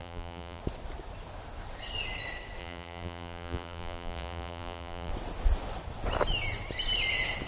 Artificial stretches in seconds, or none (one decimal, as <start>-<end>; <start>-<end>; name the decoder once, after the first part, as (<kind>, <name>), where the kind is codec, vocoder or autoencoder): 0.0-0.6 (vocoder, BigVGAN v2); 2.6-5.1